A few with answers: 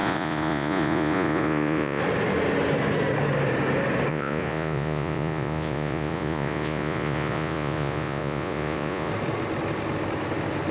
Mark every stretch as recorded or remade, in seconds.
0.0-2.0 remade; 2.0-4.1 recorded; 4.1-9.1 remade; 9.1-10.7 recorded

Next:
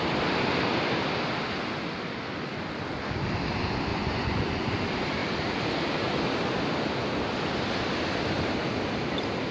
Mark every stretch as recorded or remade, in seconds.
0.0-3.9 recorded; 3.9-4.7 remade; 4.7-9.5 recorded

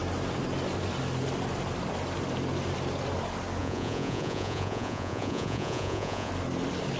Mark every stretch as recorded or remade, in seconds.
0.0-3.6 recorded; 3.6-6.3 remade; 6.3-7.0 recorded

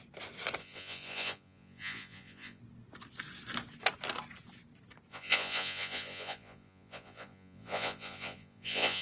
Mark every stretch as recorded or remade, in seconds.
0.0-0.6 recorded; 0.6-2.6 remade; 2.6-5.1 recorded; 5.1-9.0 remade

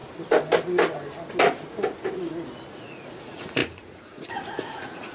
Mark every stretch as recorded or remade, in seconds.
0.0-2.7 recorded; 2.7-5.1 remade

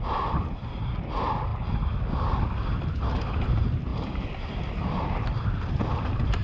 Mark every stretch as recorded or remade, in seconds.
0.0-6.4 recorded

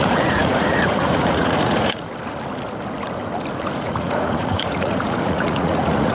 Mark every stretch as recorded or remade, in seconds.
0.0-2.1 remade; 2.1-3.5 recorded; 3.5-6.1 remade